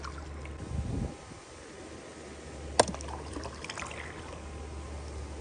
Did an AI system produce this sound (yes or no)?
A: no